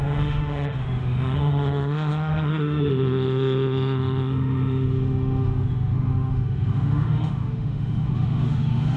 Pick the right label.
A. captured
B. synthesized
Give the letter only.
B